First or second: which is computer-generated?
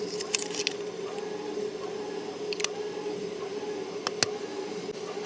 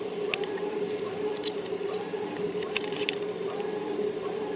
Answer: second